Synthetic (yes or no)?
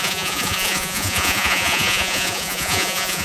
yes